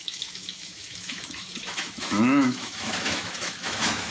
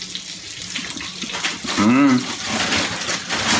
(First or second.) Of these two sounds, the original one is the second